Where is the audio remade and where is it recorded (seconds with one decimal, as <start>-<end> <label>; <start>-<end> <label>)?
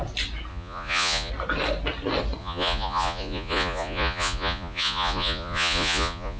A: 0.0-0.5 recorded; 0.5-1.3 remade; 1.3-2.4 recorded; 2.4-6.4 remade